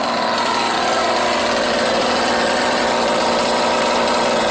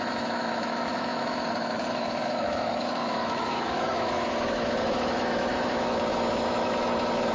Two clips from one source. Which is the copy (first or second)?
second